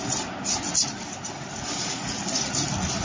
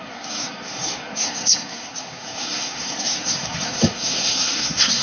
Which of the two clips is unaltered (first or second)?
first